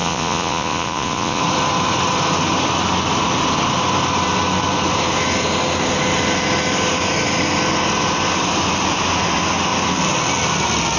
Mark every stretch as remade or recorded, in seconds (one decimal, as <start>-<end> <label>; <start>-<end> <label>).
0.0-1.4 remade; 1.4-11.0 recorded